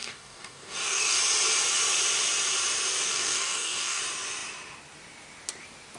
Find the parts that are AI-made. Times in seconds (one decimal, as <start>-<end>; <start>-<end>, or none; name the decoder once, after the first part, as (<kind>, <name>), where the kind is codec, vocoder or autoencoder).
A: 0.0-1.2 (codec, DAC); 2.9-4.0